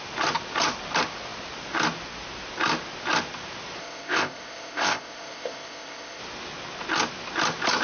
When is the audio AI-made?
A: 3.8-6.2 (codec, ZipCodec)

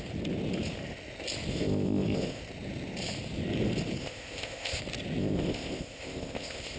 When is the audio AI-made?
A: 1.5-2.4 (codec, ZipCodec); 4.0-4.8; 5.2-6.8

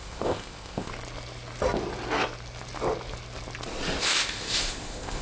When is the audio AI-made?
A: 0.0-0.9 (codec, ZipCodec); 4.0-5.2